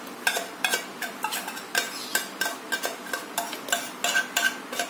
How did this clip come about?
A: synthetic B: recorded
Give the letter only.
B